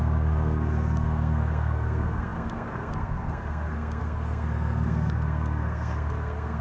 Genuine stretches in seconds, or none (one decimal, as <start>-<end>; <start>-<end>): none